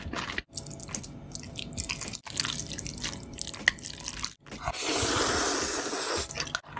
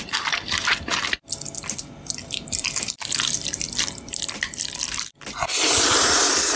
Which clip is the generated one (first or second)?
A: second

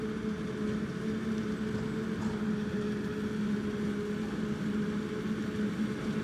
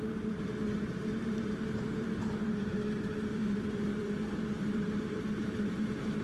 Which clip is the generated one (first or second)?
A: second